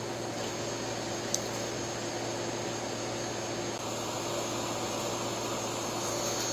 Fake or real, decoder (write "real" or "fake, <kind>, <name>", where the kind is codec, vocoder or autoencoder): real